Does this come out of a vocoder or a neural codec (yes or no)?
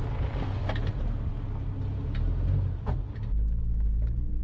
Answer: no